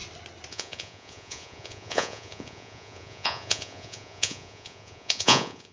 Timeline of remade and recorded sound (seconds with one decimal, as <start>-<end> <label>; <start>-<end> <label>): 0.0-0.5 recorded; 0.5-5.7 remade